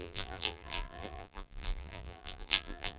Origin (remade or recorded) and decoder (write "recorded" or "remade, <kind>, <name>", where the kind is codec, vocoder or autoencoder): remade, vocoder, BigVGAN v2